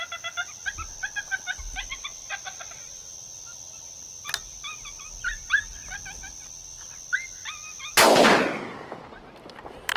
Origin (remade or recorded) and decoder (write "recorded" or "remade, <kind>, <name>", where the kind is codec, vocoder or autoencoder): recorded